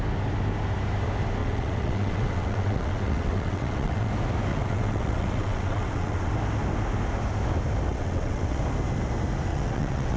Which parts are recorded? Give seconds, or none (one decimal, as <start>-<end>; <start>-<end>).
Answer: 0.0-1.4; 4.1-4.5; 6.3-7.9; 8.6-9.5